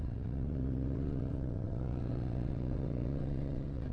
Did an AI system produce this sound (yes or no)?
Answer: yes